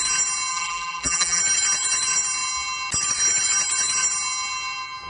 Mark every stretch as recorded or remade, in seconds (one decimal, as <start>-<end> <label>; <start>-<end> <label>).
0.0-0.5 recorded; 0.5-1.4 remade; 1.4-5.1 recorded

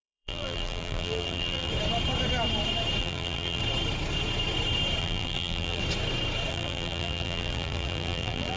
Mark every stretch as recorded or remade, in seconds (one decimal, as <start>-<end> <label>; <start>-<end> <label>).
0.0-1.7 remade; 1.7-3.0 recorded; 3.0-3.6 remade; 3.6-5.0 recorded; 5.0-5.8 remade; 5.8-6.5 recorded; 6.5-8.6 remade

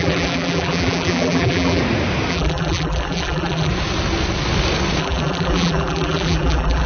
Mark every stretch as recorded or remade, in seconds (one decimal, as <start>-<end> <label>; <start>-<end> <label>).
0.0-1.8 remade; 1.8-2.3 recorded; 2.3-3.7 remade; 3.7-5.0 recorded; 5.0-6.9 remade

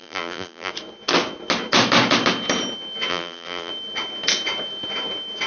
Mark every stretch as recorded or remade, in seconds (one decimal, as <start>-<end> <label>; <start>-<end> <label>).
0.0-0.7 remade; 0.7-3.1 recorded; 3.1-3.7 remade; 3.7-5.5 recorded

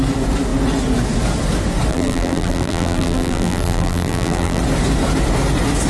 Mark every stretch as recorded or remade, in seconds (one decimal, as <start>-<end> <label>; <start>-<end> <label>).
0.0-1.9 recorded; 1.9-4.6 remade; 4.6-5.9 recorded